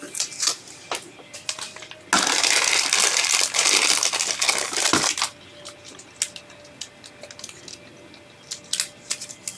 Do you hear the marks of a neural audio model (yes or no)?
no